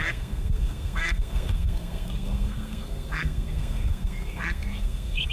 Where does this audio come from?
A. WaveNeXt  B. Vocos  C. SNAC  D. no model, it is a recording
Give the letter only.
C